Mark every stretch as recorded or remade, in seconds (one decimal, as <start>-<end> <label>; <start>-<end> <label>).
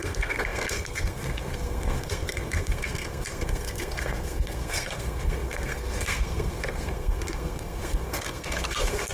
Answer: 0.0-9.1 remade